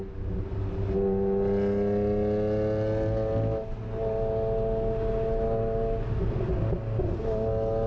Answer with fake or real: real